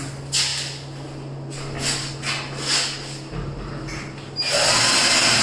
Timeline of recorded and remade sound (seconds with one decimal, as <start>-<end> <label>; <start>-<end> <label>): 0.0-5.4 recorded